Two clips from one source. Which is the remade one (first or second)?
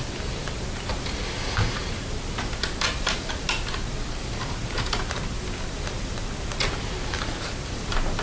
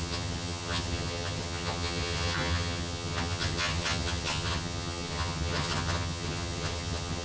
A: second